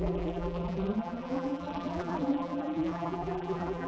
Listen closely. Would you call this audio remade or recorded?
remade